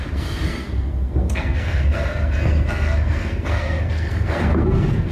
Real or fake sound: fake